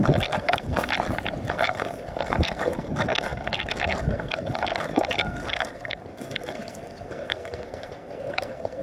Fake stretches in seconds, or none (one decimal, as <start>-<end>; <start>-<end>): 0.0-0.9; 1.5-8.8